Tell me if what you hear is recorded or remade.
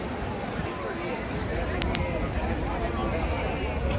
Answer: recorded